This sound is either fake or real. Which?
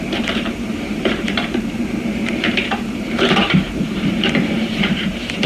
fake